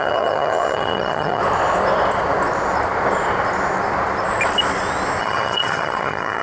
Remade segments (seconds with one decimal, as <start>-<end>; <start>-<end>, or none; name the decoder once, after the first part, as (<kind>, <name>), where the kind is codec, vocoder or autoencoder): 0.0-1.4 (vocoder, HiFi-GAN); 5.2-6.4

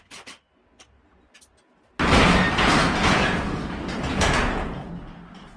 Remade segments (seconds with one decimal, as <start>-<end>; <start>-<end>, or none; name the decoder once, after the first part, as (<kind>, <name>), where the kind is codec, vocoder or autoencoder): 2.8-3.6 (vocoder, Vocos); 4.1-4.9

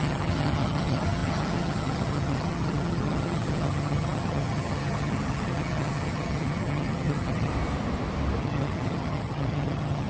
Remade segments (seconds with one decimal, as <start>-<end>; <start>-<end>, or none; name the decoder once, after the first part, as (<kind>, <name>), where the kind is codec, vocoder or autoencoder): 0.0-7.5 (vocoder, HiFi-GAN); 8.4-10.1

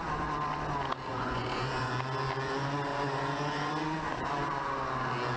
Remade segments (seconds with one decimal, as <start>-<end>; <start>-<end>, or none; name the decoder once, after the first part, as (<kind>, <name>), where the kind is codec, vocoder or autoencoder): 1.1-1.9 (vocoder, Vocos); 2.9-3.7

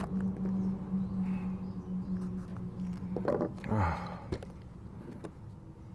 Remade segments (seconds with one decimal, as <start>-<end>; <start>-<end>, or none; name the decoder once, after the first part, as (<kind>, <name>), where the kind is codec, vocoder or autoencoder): none

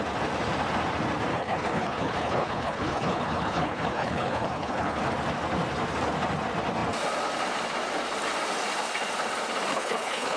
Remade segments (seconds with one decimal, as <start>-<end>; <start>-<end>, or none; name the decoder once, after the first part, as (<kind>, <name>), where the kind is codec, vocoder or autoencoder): 1.3-5.0 (codec, HILCodec); 9.7-10.4

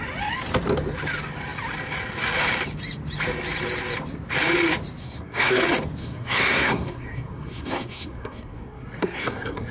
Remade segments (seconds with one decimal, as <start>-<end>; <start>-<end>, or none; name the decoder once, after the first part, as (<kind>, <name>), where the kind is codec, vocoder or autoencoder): 5.0-5.6 (codec, SNAC); 6.0-9.7